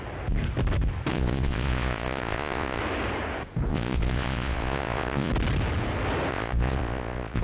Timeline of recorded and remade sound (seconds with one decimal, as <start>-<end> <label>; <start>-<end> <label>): 0.0-1.1 recorded; 1.1-2.8 remade; 2.8-3.7 recorded; 3.7-5.3 remade; 5.3-6.3 recorded; 6.3-7.4 remade